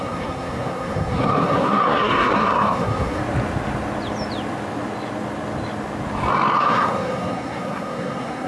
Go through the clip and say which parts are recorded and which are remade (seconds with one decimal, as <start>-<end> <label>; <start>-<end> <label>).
0.0-3.2 remade; 3.2-6.6 recorded; 6.6-8.5 remade